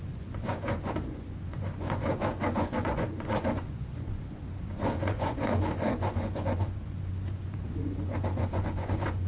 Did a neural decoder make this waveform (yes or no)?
yes